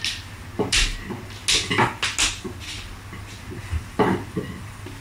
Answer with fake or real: real